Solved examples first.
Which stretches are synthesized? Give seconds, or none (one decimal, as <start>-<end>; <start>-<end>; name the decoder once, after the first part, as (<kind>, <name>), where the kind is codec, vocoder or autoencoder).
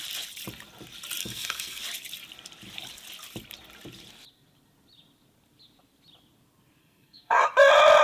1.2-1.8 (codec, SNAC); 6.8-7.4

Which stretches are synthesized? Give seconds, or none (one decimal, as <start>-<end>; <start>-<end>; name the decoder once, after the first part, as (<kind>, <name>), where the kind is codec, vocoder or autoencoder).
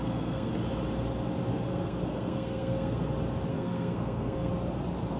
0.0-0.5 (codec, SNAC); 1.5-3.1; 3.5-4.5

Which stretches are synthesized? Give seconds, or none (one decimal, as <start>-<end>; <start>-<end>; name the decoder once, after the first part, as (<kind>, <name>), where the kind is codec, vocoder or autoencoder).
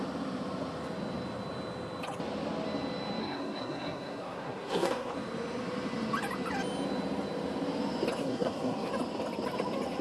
3.2-5.1 (codec, SNAC); 8.2-8.9